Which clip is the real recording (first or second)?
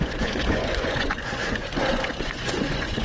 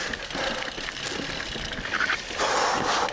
second